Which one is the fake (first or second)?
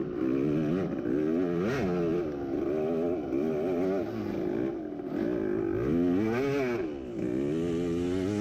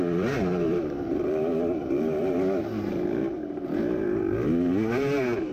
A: second